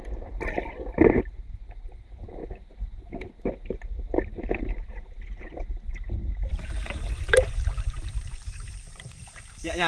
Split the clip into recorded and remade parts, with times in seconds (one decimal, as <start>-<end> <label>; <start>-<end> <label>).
0.0-6.5 recorded; 6.5-9.9 remade